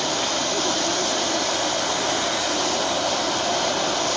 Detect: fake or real real